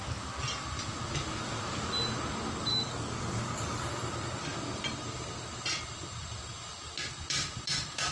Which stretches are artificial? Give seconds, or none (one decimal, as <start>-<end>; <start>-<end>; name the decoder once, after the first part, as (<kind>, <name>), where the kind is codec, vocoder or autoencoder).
2.7-3.9 (codec, DAC)